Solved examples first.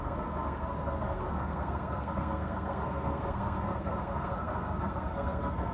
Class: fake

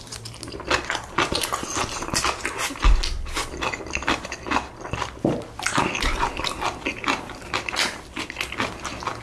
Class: real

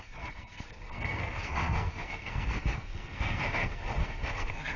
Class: fake